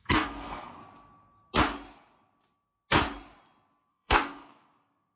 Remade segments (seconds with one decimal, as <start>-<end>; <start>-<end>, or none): 0.0-0.8; 3.9-5.2